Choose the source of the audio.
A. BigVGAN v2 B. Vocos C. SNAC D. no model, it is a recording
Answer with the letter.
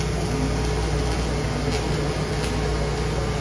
D